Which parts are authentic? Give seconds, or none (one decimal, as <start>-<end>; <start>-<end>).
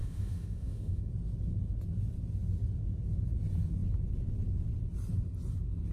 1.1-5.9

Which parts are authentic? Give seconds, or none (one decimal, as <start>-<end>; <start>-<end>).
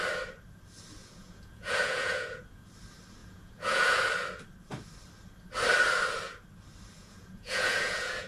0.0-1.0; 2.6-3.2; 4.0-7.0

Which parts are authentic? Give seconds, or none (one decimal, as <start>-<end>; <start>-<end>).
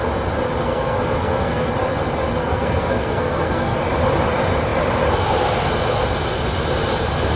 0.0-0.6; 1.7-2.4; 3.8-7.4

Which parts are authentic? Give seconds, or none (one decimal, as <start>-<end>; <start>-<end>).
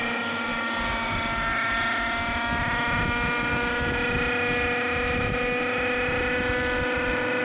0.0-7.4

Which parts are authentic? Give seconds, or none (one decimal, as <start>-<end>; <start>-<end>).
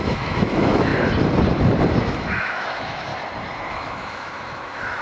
0.9-2.0; 3.1-3.7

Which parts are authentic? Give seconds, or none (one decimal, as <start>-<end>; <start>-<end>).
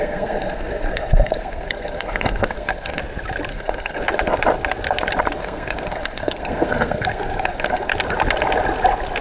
3.0-3.5; 4.0-5.4; 7.9-9.2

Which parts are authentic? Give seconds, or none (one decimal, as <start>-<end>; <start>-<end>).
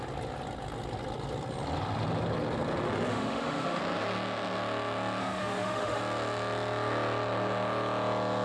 0.0-3.1; 3.8-5.2; 6.0-8.4